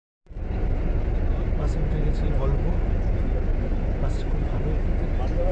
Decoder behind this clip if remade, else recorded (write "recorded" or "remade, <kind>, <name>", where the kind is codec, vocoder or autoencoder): recorded